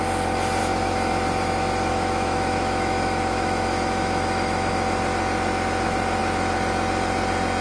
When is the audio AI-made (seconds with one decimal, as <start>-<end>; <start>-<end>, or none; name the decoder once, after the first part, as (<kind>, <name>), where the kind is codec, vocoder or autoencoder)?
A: 0.6-1.1 (autoencoder, DAC-VAE); 1.9-4.7